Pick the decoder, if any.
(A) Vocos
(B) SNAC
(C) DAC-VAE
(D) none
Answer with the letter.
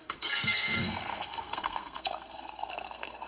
B